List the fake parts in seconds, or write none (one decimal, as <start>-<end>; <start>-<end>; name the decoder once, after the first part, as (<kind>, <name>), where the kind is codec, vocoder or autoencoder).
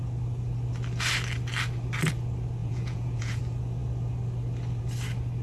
2.6-3.4 (vocoder, Vocos)